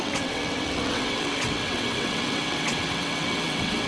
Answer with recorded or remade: remade